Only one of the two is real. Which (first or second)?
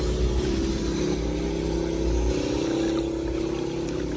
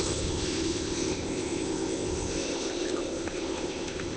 first